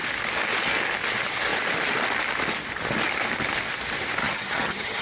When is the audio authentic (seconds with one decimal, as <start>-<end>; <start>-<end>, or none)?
0.0-4.2